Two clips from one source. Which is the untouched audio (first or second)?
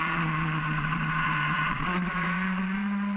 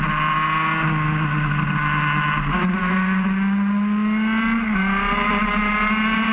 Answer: second